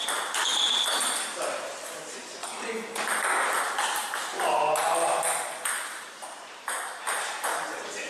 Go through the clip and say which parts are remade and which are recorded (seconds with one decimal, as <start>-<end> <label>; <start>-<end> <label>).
0.0-2.4 remade; 2.4-6.2 recorded; 6.2-8.1 remade